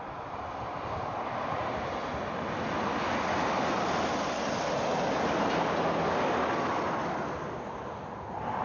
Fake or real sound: real